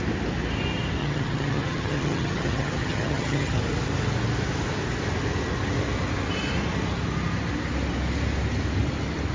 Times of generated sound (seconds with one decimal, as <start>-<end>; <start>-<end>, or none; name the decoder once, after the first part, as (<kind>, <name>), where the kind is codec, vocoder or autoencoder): 1.0-3.6 (vocoder, HiFi-GAN)